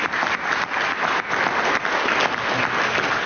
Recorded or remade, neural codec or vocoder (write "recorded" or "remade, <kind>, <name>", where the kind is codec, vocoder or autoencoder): recorded